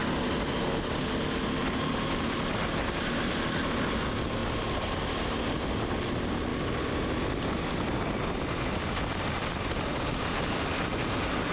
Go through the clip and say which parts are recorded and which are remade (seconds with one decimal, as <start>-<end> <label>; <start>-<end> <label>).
0.0-11.5 recorded

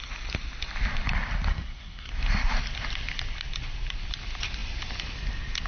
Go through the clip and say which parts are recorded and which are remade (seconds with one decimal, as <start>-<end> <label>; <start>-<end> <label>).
0.0-1.5 recorded; 1.5-2.1 remade; 2.1-5.7 recorded

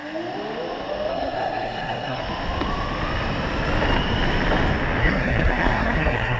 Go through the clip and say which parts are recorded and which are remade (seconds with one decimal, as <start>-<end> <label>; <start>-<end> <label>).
0.0-1.1 recorded; 1.1-2.2 remade; 2.2-5.0 recorded; 5.0-6.4 remade

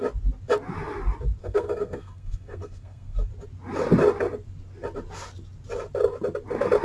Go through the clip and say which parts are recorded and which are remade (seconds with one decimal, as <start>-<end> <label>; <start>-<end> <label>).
0.0-1.4 recorded; 1.4-3.3 remade; 3.3-6.8 recorded

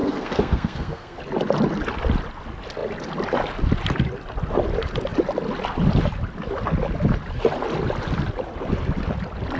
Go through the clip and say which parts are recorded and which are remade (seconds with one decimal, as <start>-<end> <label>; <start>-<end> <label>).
0.0-1.2 remade; 1.2-9.6 recorded

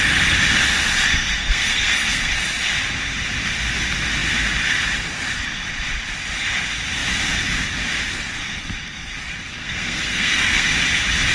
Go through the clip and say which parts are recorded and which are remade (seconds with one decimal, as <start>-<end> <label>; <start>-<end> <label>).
0.0-1.4 recorded; 1.4-2.4 remade; 2.4-9.6 recorded; 9.6-10.7 remade; 10.7-11.3 recorded

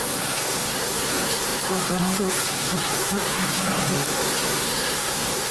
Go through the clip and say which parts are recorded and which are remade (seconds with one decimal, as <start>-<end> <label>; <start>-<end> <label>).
0.0-5.5 remade

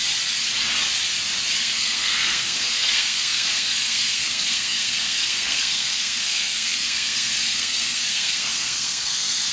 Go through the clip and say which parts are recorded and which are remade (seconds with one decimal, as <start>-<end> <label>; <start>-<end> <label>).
0.0-1.6 recorded; 1.6-9.5 remade